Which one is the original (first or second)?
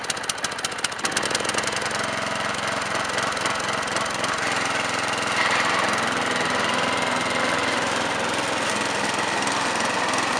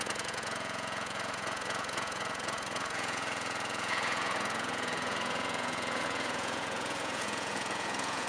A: first